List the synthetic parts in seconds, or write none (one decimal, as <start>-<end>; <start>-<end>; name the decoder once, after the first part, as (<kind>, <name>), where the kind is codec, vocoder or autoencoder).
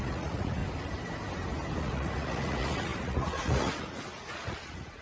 0.0-0.6 (vocoder, Vocos); 1.8-5.0